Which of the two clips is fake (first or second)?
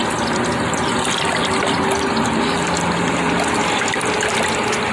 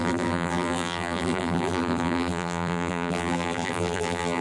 second